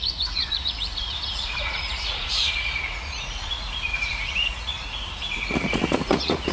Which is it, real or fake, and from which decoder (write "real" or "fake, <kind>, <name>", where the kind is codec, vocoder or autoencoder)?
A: fake, vocoder, Vocos